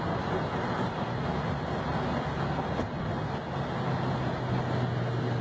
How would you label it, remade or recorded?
recorded